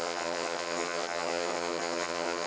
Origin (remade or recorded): remade